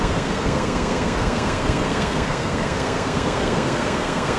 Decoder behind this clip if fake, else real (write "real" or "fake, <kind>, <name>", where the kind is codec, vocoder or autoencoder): fake, codec, SNAC